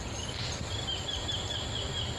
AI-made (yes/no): yes